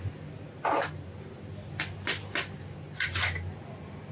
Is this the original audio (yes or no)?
yes